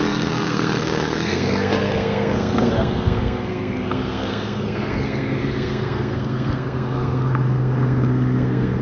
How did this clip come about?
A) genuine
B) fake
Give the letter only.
B